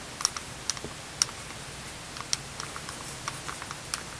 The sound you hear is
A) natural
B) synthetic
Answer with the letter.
A